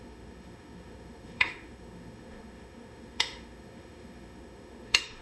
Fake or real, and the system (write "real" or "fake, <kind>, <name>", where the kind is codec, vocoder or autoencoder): fake, autoencoder, DAC-VAE